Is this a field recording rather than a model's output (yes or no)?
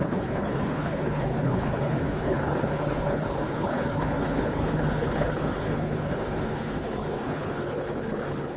no